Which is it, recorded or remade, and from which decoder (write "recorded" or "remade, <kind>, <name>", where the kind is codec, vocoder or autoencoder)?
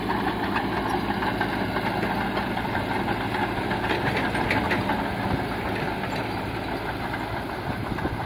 recorded